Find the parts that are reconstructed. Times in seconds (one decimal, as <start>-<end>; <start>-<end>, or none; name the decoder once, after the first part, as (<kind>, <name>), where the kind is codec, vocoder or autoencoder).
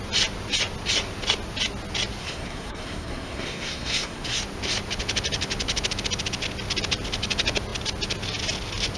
2.2-4.4 (codec, SNAC)